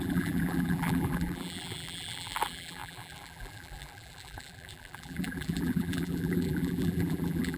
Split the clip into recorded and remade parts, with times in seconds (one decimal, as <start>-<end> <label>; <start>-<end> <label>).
0.0-7.6 remade